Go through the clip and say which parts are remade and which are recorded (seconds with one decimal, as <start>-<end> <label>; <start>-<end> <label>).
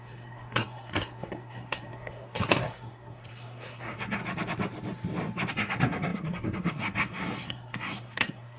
0.0-4.2 remade; 4.2-5.5 recorded; 5.5-8.6 remade